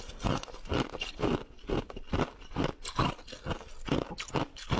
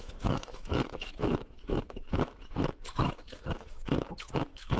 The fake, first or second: second